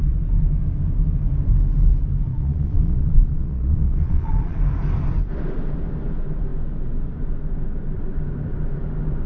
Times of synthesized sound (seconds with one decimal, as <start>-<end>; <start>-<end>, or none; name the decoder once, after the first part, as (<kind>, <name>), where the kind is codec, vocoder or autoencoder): 2.3-4.6 (vocoder, Vocos)